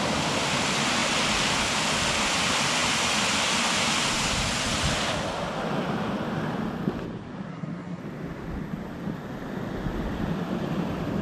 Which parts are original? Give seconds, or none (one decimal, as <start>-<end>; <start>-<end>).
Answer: 0.0-7.5; 8.0-11.2